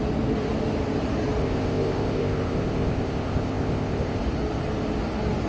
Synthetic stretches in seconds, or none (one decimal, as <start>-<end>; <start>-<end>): 1.4-4.2